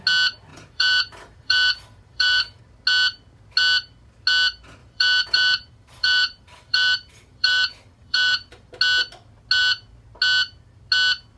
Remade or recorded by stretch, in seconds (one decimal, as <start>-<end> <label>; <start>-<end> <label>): 0.0-0.5 recorded; 0.5-2.6 remade; 2.6-4.8 recorded; 4.8-8.7 remade; 8.7-11.4 recorded